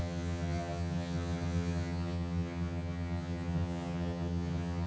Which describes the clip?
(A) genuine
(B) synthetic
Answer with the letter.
B